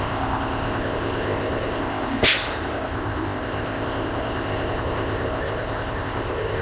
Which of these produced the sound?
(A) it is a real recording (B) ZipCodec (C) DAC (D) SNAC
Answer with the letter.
B